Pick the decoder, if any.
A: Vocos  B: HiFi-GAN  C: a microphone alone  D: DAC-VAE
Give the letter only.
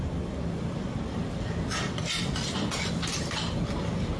C